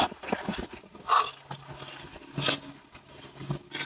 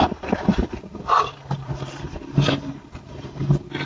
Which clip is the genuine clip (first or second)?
first